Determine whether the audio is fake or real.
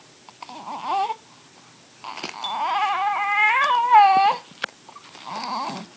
real